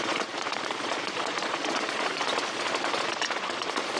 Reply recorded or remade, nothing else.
remade